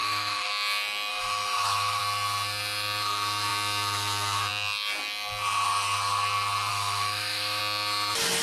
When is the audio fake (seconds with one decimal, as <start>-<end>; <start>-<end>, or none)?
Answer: 0.0-0.5; 1.1-2.0; 6.7-7.6

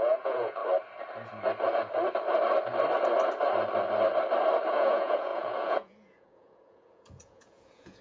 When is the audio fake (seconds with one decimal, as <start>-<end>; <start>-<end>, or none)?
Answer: 0.0-0.6; 4.7-8.0

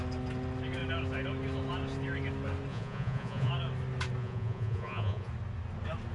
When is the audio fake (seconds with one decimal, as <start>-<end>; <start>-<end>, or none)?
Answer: 2.7-3.5; 4.2-5.3